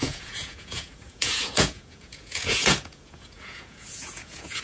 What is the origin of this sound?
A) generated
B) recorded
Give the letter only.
A